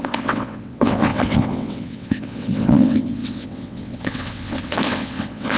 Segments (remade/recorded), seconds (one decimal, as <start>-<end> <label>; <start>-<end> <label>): 0.0-5.6 remade